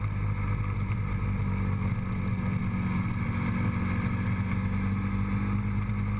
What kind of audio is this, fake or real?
real